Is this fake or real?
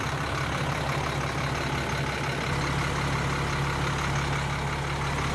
real